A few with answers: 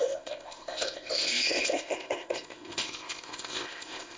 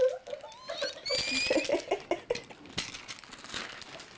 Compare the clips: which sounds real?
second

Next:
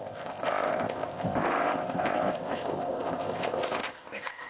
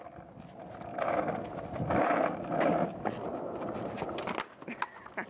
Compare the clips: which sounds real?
second